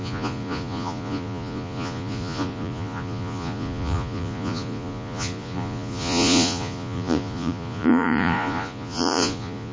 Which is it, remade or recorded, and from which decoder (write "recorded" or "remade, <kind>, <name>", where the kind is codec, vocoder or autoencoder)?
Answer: remade, vocoder, Vocos